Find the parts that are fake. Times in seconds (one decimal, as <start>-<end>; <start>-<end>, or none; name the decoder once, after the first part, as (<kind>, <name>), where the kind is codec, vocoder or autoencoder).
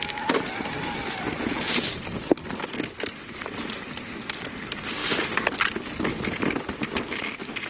none